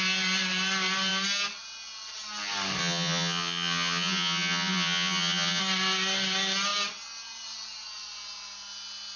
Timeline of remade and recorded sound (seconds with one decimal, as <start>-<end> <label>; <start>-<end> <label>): 0.0-2.8 recorded; 2.8-5.6 remade; 5.6-9.2 recorded